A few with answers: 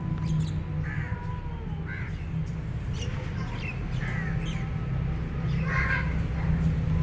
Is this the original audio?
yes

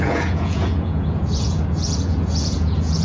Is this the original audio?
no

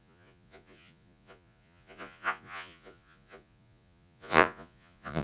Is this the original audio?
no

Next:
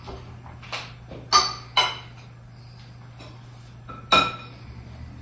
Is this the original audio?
yes